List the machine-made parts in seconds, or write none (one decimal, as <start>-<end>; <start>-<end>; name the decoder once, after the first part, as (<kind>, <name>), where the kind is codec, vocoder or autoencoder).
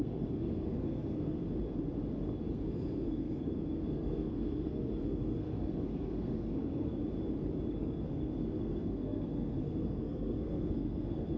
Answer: 0.0-1.4 (codec, SNAC); 2.5-7.0; 7.7-11.4